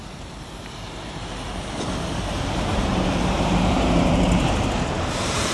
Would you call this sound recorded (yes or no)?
no